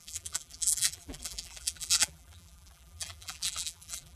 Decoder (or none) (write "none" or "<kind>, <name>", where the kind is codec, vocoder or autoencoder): vocoder, BigVGAN v2